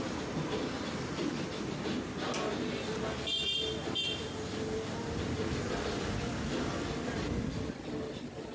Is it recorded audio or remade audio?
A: recorded